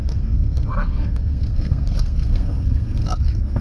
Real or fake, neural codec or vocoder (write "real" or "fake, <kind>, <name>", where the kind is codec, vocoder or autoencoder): fake, codec, SNAC